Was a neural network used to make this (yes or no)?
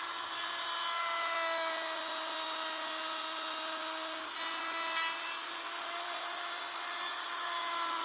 no